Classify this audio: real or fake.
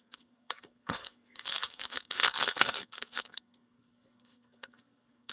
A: fake